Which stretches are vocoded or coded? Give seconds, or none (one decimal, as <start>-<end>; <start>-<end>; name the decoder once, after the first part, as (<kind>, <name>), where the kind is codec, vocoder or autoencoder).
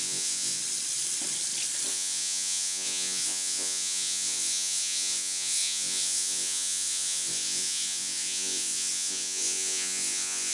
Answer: 0.0-0.6 (vocoder, Vocos); 1.9-10.5